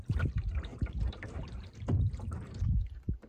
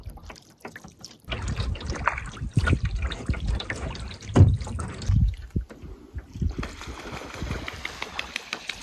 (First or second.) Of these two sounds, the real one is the second